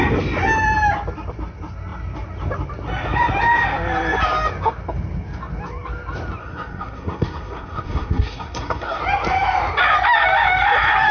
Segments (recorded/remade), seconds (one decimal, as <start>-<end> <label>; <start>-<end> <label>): 0.0-6.4 recorded; 6.4-9.0 remade; 9.0-11.1 recorded